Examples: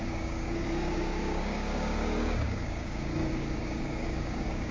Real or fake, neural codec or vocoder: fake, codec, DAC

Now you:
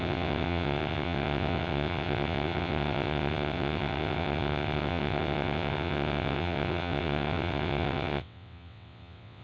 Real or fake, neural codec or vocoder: fake, vocoder, WaveNeXt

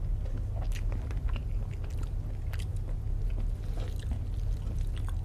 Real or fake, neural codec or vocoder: real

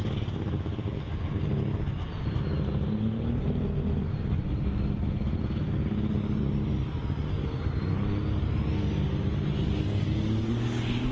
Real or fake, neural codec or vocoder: real